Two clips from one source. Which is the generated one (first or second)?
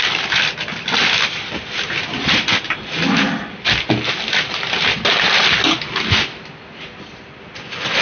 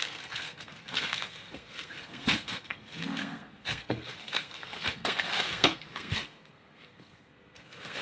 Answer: second